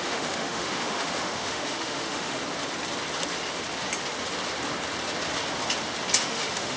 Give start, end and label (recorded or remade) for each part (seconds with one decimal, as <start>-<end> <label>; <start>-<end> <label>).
0.0-2.4 remade; 2.4-6.2 recorded; 6.2-6.8 remade